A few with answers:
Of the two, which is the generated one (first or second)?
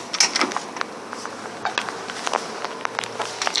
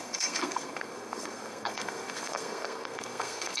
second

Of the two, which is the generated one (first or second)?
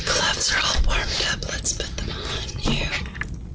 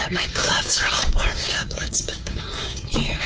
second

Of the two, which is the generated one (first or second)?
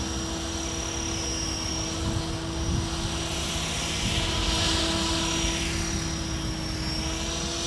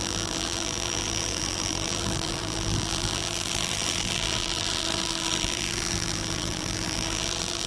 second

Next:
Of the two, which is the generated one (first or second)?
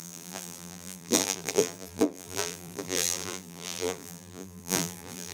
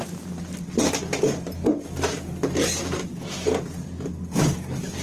first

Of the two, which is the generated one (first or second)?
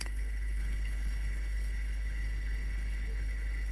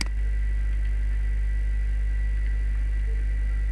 first